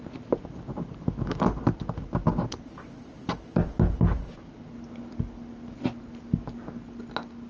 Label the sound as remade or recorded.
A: recorded